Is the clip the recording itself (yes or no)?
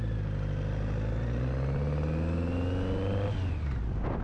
yes